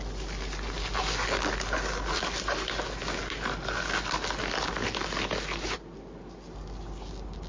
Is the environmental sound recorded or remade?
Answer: recorded